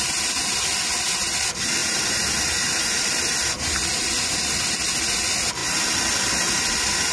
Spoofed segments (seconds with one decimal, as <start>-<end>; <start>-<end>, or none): 1.8-3.7